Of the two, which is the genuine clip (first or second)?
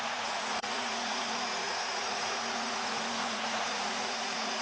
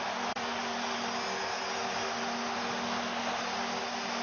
second